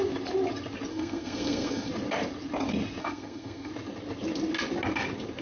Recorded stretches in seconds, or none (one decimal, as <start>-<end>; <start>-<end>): 0.0-0.9; 1.9-3.0; 3.7-5.4